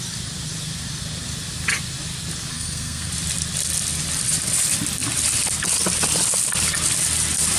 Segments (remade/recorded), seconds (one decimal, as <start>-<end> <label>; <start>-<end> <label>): 0.0-2.5 recorded; 2.5-3.1 remade; 3.1-7.6 recorded